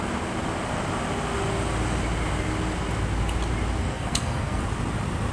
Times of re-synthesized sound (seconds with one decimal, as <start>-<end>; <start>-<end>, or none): 3.8-4.6